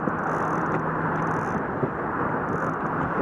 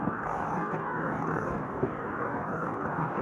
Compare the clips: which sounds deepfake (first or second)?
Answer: second